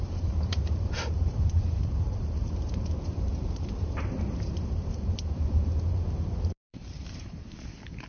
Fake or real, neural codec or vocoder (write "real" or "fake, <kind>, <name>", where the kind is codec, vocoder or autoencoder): fake, vocoder, BigVGAN v2